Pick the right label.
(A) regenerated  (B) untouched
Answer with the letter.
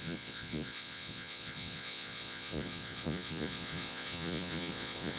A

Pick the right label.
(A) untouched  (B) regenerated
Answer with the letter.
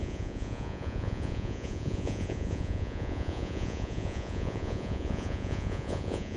B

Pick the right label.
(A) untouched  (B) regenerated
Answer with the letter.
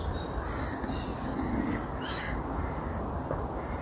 A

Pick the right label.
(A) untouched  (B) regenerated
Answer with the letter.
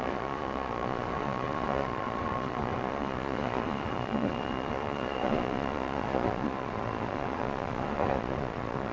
B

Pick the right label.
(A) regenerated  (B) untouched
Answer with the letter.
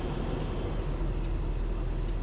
B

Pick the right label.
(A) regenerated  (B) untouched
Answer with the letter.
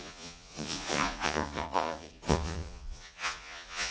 A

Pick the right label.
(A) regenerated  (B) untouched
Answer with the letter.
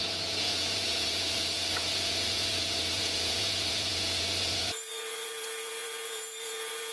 A